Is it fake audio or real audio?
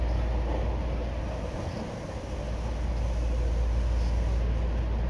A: real